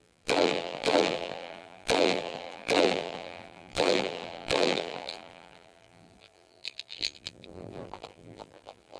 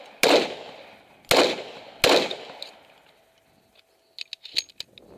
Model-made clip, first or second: first